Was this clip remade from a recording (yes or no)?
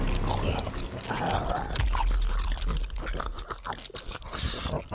no